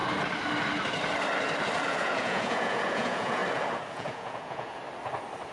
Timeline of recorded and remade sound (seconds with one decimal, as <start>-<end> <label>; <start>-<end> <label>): 0.0-1.9 recorded; 1.9-3.4 remade; 3.4-3.9 recorded; 3.9-4.8 remade; 4.8-5.5 recorded